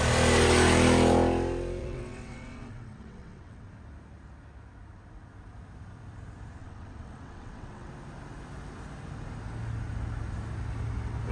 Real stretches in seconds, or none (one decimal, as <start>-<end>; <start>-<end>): 0.0-1.8; 3.7-6.6; 7.9-11.3